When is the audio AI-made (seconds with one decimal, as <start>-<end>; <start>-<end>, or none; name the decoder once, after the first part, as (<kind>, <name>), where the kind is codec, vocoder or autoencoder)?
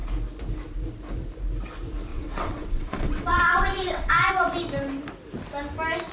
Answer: 2.1-4.3 (vocoder, WaveNeXt)